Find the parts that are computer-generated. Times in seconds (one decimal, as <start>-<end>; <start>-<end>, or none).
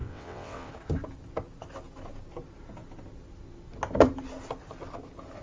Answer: 0.0-0.7